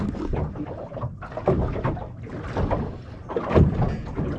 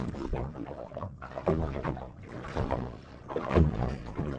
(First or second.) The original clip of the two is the first